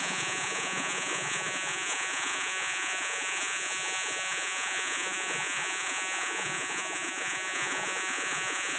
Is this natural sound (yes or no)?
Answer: no